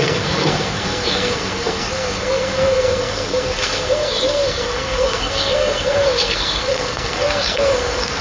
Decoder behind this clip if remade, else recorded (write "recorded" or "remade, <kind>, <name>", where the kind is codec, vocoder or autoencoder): remade, codec, SNAC